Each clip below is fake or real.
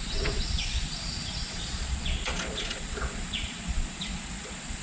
fake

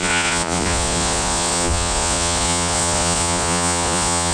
fake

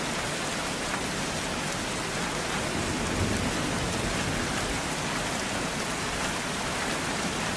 real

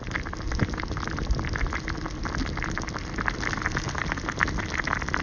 real